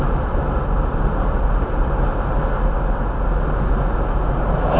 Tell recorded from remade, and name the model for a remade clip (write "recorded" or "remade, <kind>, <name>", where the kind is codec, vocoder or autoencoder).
recorded